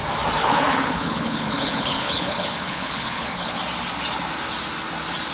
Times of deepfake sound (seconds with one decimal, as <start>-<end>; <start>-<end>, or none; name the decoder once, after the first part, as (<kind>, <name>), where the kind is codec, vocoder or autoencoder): 0.4-3.6 (codec, HILCodec)